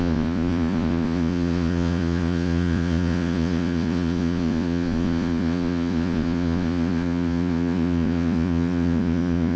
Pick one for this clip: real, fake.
fake